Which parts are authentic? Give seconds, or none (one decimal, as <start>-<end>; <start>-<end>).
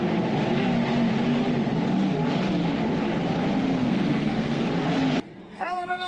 0.0-3.8; 4.6-5.3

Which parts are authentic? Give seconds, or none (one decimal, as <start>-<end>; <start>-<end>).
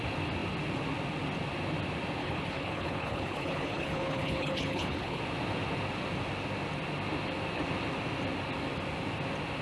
0.0-2.2; 5.2-9.6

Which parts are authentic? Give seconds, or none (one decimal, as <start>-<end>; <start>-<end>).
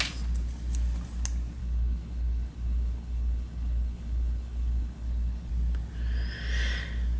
0.0-1.6; 5.5-7.2